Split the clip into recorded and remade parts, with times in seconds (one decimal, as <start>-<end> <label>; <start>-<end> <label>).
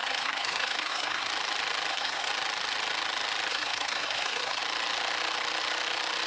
0.0-1.3 remade; 1.3-1.9 recorded; 1.9-2.3 remade; 2.3-3.5 recorded; 3.5-4.6 remade; 4.6-6.3 recorded